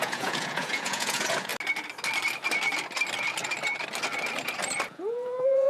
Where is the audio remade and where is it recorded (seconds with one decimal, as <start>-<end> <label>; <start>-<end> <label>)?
0.0-1.5 remade; 1.5-4.9 recorded; 4.9-5.7 remade